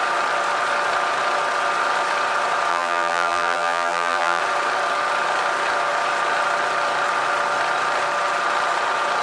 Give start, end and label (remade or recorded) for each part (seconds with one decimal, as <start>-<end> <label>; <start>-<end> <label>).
0.0-2.7 recorded; 2.7-4.4 remade; 4.4-9.2 recorded